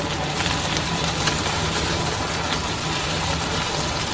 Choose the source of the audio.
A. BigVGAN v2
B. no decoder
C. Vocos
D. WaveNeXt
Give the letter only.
B